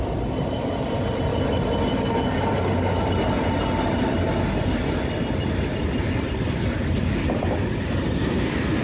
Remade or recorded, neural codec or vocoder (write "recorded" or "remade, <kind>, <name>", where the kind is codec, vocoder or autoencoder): recorded